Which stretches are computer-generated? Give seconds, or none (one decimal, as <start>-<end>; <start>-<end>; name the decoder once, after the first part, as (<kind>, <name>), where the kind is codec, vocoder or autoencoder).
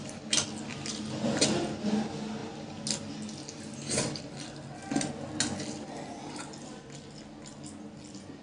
none